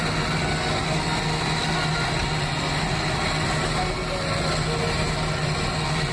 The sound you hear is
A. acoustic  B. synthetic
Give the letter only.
A